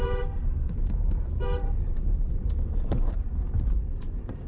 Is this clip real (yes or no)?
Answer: no